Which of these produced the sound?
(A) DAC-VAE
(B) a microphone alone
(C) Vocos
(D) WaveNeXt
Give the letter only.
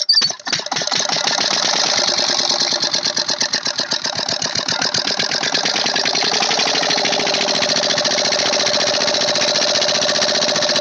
B